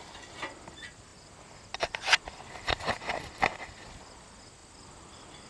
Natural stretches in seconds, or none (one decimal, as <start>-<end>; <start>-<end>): 0.0-5.5